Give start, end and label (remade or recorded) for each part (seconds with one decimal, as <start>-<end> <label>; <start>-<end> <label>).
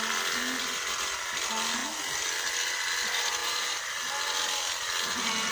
0.0-3.4 recorded; 3.4-4.0 remade; 4.0-5.5 recorded